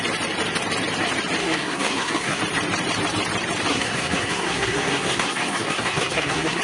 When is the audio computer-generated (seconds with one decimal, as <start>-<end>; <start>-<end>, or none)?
1.4-2.4; 3.7-6.6

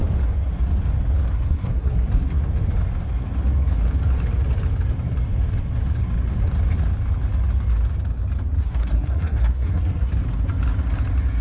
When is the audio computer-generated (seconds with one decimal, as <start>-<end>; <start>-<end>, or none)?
1.3-2.4; 8.6-10.1

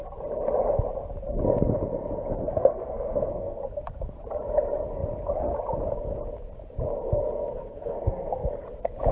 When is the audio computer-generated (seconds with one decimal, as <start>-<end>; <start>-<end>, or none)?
2.6-3.6; 7.5-8.5

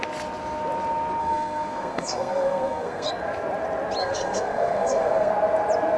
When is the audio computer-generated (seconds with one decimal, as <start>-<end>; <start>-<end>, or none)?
1.2-3.1; 4.0-5.3

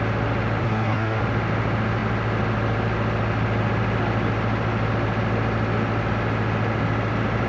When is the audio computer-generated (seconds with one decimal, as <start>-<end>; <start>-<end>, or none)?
0.6-1.2

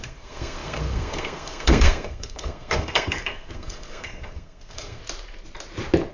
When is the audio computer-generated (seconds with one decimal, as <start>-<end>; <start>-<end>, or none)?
0.0-5.0

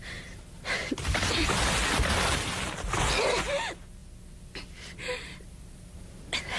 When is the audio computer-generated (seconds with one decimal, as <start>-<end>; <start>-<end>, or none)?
none